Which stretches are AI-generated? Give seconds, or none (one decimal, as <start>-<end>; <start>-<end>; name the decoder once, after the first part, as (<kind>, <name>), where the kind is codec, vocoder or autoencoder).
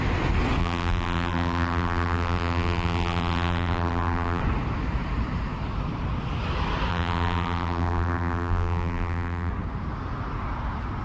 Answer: 0.6-4.4 (vocoder, BigVGAN v2); 6.9-9.5